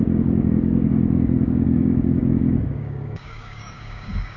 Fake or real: fake